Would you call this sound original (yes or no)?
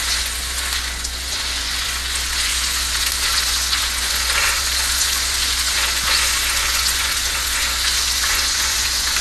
no